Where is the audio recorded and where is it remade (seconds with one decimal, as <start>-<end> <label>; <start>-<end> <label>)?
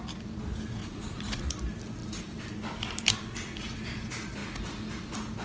0.0-0.8 recorded; 0.8-1.6 remade; 1.6-5.4 recorded